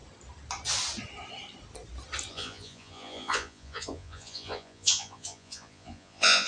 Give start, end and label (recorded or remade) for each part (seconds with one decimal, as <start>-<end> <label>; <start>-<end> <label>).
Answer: 0.0-2.3 recorded; 2.3-6.5 remade